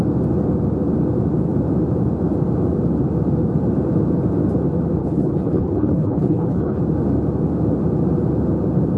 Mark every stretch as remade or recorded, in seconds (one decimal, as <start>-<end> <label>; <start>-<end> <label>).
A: 0.0-5.0 recorded; 5.0-6.8 remade; 6.8-9.0 recorded